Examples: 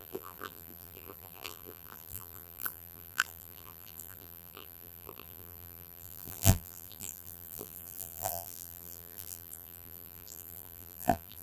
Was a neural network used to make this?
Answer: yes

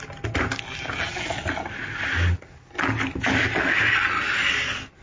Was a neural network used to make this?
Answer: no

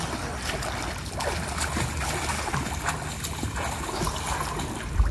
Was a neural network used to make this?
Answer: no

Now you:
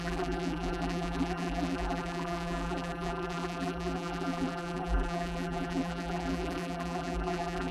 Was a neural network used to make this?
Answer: yes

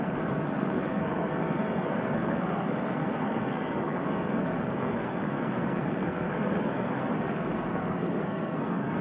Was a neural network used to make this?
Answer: yes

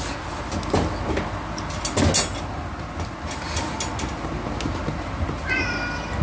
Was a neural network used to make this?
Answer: no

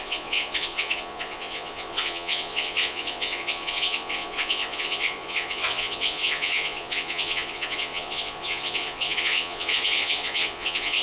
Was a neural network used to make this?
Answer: yes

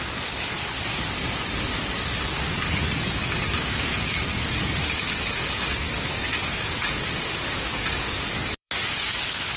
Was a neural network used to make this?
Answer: yes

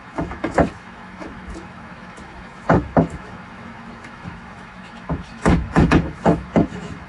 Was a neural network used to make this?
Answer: yes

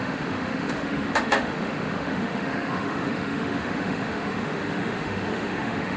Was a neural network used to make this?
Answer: yes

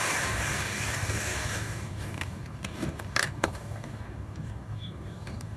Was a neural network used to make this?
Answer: yes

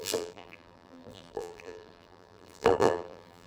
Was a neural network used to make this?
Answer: yes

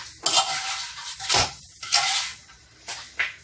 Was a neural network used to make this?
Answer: no